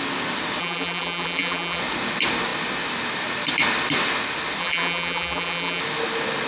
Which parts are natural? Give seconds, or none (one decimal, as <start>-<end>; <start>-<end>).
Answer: 0.0-0.6; 1.8-4.6; 5.8-6.5